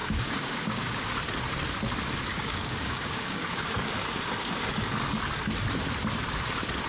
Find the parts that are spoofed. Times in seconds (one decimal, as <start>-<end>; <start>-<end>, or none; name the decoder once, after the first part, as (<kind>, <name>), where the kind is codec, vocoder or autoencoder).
0.0-1.1 (codec, DAC); 2.3-3.9